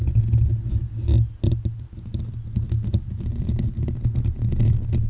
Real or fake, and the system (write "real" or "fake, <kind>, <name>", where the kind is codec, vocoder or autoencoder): real